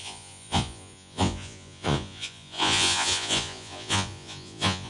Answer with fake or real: fake